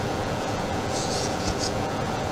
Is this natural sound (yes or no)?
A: no